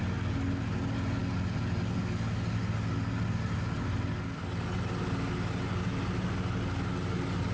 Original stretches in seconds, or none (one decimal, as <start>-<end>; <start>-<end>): 0.0-7.5